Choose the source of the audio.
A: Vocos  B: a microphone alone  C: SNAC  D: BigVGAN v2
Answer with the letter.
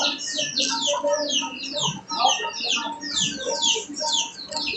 B